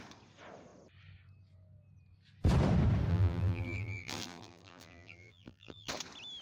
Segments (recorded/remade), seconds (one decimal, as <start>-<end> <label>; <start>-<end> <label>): 0.0-3.1 recorded; 3.1-5.9 remade; 5.9-6.4 recorded